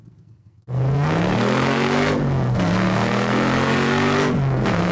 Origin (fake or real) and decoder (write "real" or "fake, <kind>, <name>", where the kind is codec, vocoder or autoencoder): fake, codec, SNAC